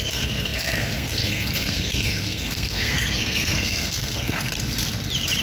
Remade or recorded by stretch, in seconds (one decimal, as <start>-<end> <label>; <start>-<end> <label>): 0.0-4.5 remade; 4.5-5.4 recorded